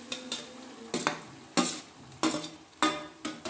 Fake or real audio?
real